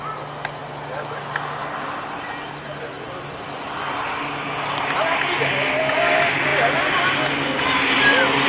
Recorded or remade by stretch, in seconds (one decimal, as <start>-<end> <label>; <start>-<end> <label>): 0.0-8.5 recorded